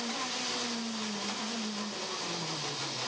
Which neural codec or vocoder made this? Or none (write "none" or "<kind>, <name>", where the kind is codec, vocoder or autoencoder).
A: none